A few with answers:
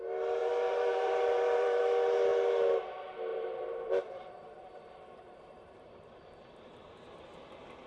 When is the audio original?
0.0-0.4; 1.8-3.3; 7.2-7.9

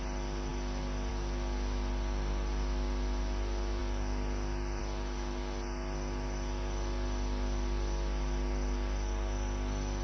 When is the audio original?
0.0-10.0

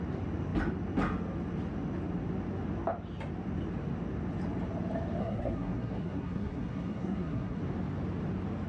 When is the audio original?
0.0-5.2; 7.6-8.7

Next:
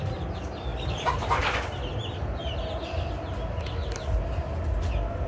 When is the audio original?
0.0-5.3

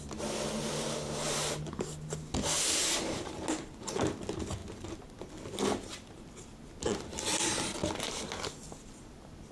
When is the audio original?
0.0-9.5